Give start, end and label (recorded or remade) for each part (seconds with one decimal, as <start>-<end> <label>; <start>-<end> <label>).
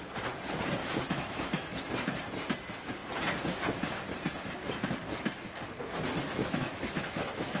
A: 0.0-0.8 recorded; 0.8-1.9 remade; 1.9-6.4 recorded; 6.4-7.6 remade